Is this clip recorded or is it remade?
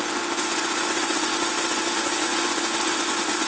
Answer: remade